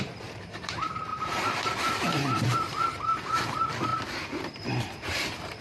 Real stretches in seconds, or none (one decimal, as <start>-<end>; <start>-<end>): none

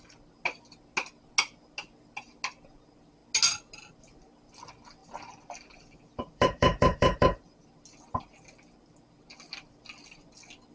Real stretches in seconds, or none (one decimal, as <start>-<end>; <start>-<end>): 0.0-5.0; 7.5-10.7

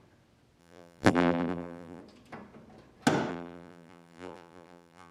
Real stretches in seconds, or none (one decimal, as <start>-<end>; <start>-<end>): 0.0-0.6; 2.0-3.3

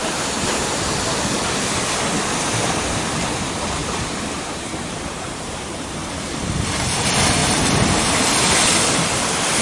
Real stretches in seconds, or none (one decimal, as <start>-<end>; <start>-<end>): 0.5-3.8; 5.5-7.4; 8.1-9.6

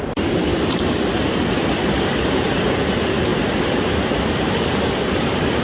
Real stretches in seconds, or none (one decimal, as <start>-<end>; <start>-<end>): 0.5-2.3; 3.3-5.1

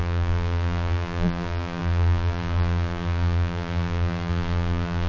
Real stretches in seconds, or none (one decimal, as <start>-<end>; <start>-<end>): none